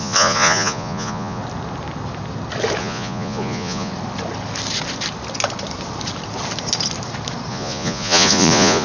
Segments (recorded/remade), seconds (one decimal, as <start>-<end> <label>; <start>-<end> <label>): 0.0-1.4 remade; 1.4-2.8 recorded; 2.8-3.9 remade; 3.9-7.5 recorded; 7.5-8.8 remade